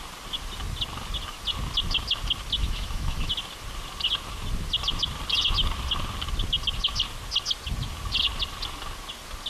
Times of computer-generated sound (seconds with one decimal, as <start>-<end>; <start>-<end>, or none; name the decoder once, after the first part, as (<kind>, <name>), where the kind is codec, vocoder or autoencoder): 2.6-3.3 (autoencoder, DAC-VAE)